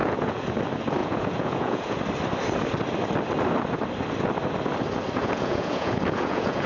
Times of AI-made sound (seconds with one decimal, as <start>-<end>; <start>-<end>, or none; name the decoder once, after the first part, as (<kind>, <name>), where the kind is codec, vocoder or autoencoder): 0.0-0.5 (vocoder, Vocos); 1.0-2.0; 5.2-6.7